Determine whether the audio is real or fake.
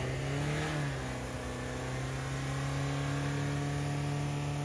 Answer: real